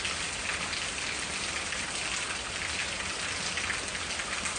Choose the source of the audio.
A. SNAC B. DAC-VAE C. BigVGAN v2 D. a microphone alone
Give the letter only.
D